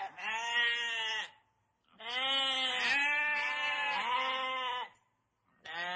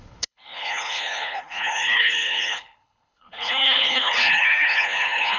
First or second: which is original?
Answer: first